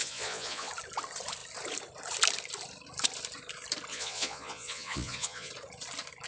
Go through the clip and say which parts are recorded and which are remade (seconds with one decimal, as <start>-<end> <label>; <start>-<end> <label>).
0.0-0.7 remade; 0.7-3.9 recorded; 3.9-5.5 remade; 5.5-6.3 recorded